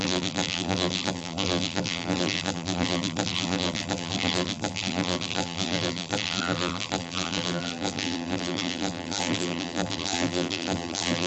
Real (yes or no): no